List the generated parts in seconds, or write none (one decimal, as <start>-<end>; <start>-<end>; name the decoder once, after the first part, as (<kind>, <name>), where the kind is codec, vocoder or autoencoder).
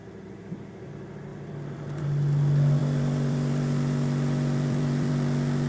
0.0-0.9 (vocoder, BigVGAN v2); 1.3-2.0; 2.8-5.1